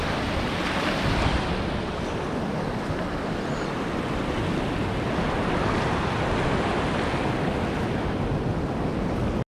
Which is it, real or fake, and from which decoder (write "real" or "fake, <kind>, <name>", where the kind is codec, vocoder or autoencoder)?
real